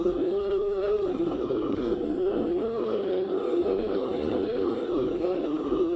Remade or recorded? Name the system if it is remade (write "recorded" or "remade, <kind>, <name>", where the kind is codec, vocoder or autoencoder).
remade, codec, SNAC